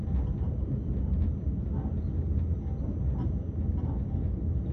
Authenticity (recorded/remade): recorded